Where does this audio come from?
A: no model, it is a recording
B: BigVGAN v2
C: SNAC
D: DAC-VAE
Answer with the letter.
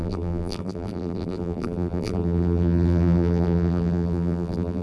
B